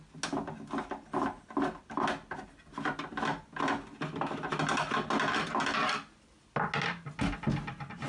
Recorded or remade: recorded